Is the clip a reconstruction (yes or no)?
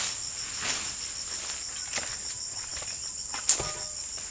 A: no